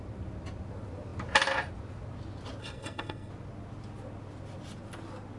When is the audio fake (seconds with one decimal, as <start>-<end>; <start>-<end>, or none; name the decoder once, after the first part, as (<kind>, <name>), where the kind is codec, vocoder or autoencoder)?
2.6-3.3 (codec, SNAC)